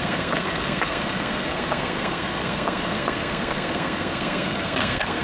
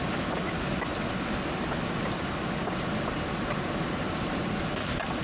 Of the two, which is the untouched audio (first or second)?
second